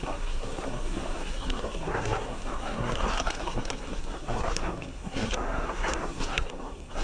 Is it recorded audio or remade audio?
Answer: remade